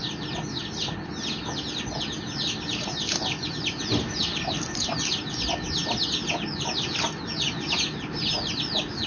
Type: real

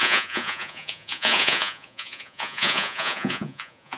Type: fake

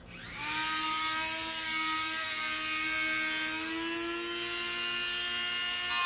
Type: real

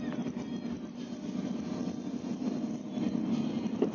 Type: real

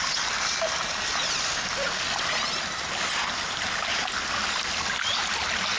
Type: real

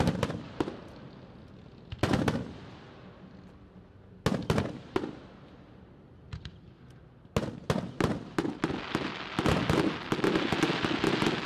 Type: real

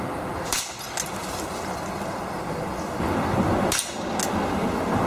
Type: real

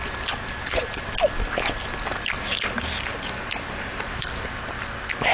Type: real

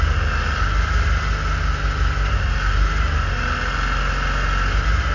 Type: real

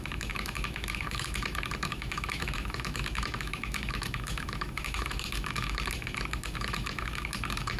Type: fake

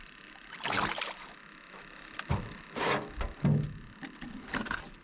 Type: real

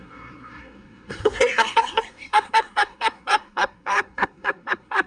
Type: fake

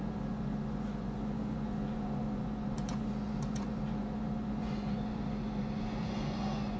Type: fake